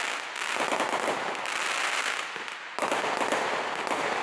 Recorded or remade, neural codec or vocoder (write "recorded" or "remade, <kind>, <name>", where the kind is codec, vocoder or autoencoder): recorded